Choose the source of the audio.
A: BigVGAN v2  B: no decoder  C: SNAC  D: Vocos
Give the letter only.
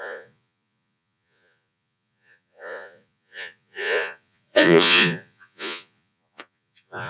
D